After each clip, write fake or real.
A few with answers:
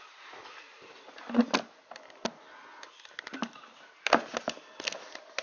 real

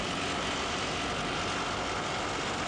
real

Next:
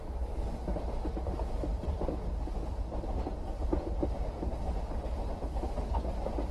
real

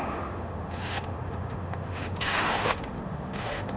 fake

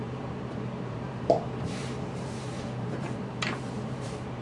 fake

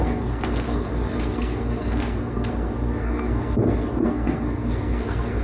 fake